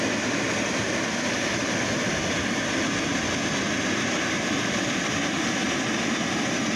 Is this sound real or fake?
real